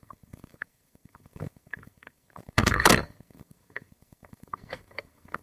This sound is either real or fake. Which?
fake